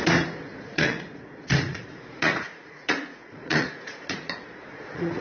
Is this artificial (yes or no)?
yes